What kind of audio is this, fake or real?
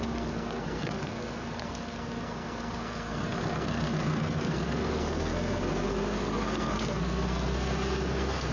fake